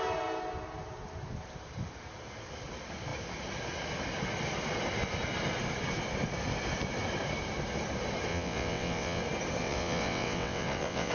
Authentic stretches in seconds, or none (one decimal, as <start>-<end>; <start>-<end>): 0.0-8.3; 9.2-9.6